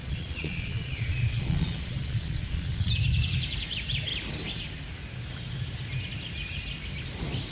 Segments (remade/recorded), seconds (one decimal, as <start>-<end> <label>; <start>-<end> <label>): 0.0-2.9 remade; 2.9-7.5 recorded